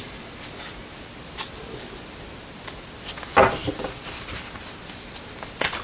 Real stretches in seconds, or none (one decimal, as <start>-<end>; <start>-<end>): 0.0-5.8